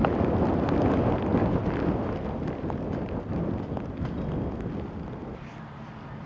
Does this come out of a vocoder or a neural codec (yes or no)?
no